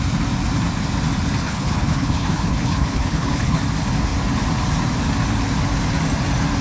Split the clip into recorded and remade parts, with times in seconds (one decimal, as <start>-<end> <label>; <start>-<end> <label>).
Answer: 0.0-1.4 recorded; 1.4-3.6 remade; 3.6-6.6 recorded